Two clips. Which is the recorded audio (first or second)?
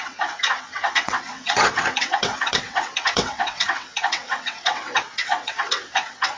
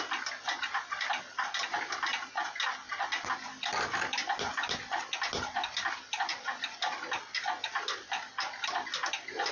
second